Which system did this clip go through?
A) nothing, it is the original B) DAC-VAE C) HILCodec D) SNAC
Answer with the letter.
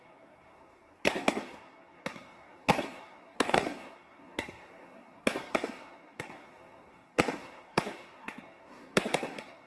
D